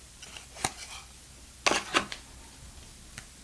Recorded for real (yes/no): yes